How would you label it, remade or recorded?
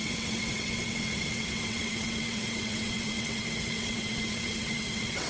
remade